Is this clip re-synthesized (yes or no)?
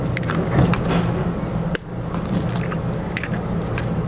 no